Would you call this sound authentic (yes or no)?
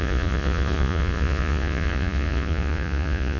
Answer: no